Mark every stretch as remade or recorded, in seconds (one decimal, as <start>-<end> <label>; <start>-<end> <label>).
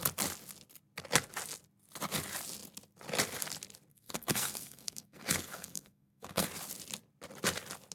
0.0-3.9 recorded; 3.9-6.5 remade; 6.5-7.9 recorded